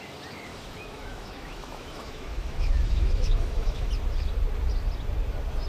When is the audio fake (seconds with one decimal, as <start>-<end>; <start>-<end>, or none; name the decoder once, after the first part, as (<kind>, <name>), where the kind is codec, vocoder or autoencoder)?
0.5-3.9 (autoencoder, DAC-VAE)